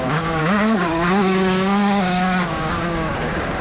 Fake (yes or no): yes